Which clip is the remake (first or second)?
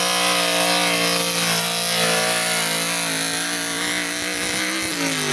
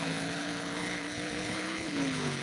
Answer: second